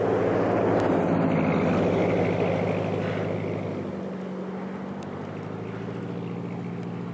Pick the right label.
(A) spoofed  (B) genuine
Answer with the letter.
B